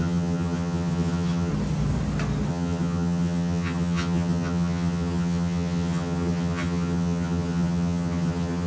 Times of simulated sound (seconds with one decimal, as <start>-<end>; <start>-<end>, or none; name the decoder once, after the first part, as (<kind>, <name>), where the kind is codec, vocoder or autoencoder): 0.0-1.5 (vocoder, HiFi-GAN); 2.5-8.7